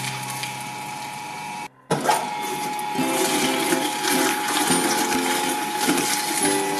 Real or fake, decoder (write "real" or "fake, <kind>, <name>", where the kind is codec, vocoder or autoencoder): real